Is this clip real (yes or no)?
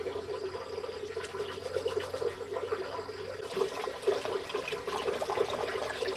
yes